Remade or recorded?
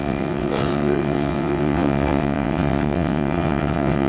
remade